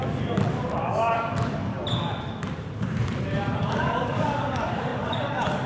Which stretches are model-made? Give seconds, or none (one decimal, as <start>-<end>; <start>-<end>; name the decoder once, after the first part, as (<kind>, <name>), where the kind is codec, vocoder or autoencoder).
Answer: 0.0-1.7 (codec, DAC); 3.6-5.7